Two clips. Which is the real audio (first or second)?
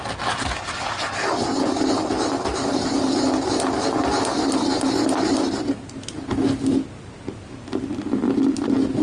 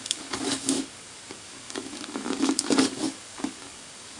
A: first